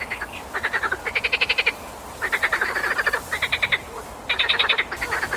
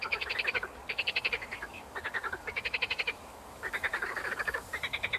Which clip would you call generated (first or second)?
second